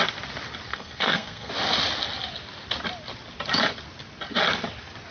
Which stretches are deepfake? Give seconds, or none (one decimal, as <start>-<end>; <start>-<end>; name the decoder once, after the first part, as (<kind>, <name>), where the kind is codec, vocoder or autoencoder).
0.7-1.5 (codec, SNAC)